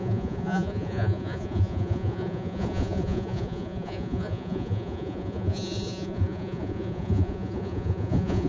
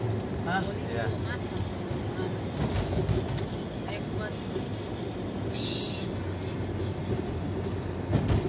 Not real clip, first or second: first